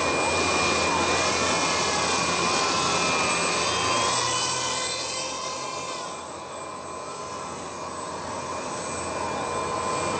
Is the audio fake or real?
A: real